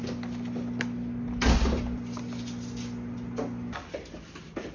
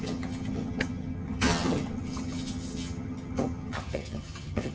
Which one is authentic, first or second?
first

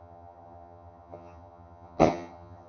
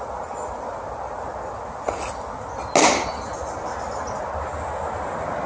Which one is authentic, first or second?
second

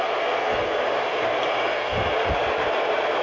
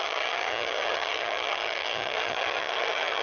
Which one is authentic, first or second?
first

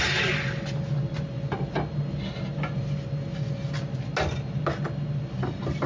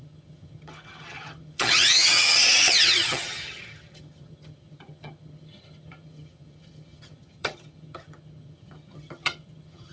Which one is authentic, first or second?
first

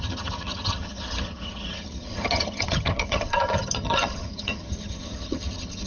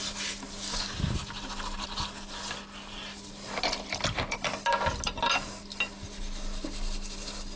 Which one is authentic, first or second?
second